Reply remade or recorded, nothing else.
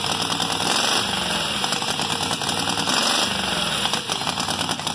recorded